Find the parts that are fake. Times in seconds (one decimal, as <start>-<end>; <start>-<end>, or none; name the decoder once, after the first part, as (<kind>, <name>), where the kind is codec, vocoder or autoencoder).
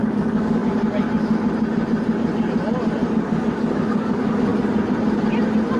0.0-0.6 (codec, DAC); 3.1-4.5